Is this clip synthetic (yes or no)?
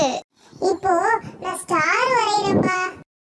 no